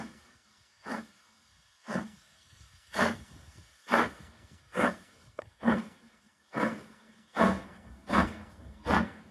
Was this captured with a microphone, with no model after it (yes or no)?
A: no